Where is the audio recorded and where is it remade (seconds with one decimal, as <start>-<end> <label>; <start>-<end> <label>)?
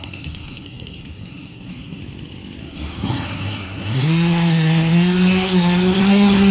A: 0.0-2.0 remade; 2.0-2.6 recorded; 2.6-6.5 remade